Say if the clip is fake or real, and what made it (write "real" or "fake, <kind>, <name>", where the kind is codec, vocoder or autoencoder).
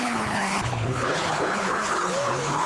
fake, codec, HILCodec